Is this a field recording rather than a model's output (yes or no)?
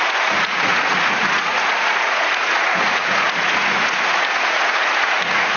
no